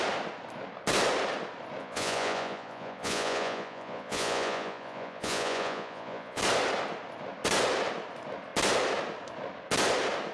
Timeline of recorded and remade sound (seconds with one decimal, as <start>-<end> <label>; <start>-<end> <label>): 0.0-1.8 recorded; 1.8-6.4 remade; 6.4-10.3 recorded